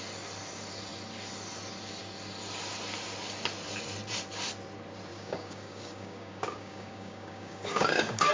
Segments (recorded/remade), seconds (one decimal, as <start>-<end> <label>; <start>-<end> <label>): 0.0-5.1 recorded; 5.1-8.3 remade